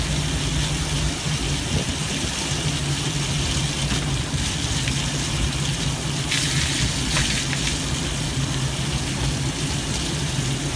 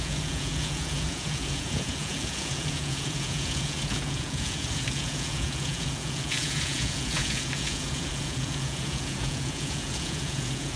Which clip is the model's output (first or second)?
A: second